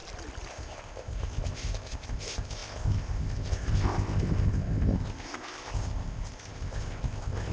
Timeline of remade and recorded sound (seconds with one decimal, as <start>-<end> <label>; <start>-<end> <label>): 0.0-0.5 recorded; 0.5-7.5 remade